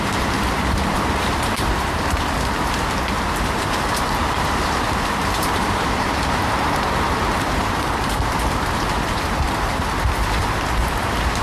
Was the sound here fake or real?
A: fake